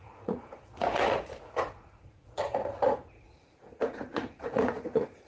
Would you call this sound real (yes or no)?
no